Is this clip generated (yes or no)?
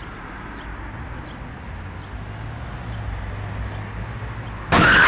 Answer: no